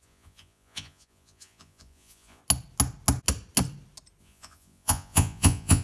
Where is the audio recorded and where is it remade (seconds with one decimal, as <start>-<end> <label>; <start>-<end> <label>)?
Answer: 0.0-2.4 remade; 2.4-4.2 recorded; 4.2-5.8 remade